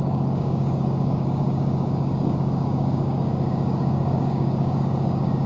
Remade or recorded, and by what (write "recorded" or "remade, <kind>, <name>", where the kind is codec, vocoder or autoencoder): remade, codec, DAC